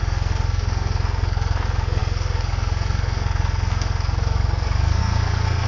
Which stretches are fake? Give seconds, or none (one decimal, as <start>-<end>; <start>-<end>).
0.0-5.7